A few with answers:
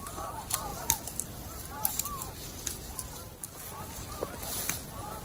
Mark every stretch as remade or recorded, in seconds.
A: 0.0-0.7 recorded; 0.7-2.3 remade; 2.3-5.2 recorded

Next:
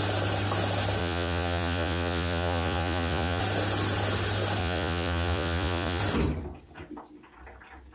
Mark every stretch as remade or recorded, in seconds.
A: 0.0-1.0 recorded; 1.0-3.4 remade; 3.4-4.6 recorded; 4.6-6.0 remade; 6.0-7.9 recorded

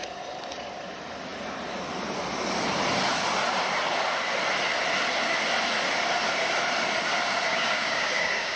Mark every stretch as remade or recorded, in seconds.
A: 0.0-7.5 recorded; 7.5-8.6 remade